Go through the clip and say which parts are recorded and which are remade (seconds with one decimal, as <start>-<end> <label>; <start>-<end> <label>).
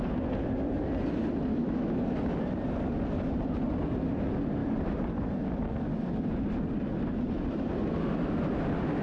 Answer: 0.0-1.5 recorded; 1.5-2.2 remade; 2.2-9.0 recorded